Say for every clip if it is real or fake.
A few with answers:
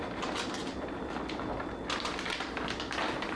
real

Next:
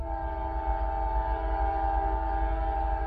real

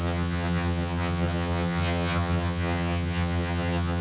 fake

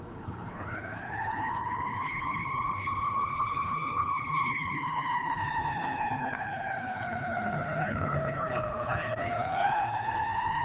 fake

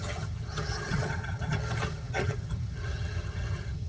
fake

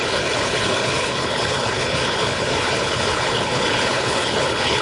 fake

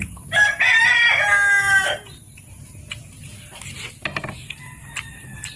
real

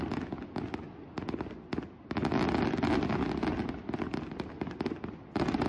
real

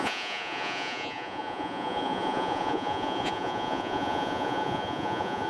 fake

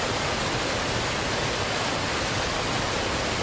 real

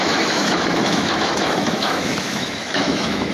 fake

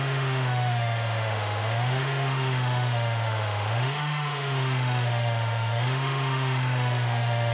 fake